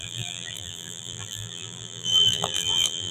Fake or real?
fake